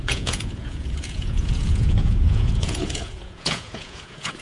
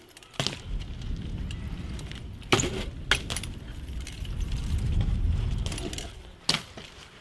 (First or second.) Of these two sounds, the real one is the second